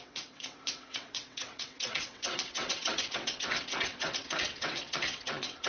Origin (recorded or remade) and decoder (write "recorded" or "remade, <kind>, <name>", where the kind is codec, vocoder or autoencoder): remade, vocoder, WaveNeXt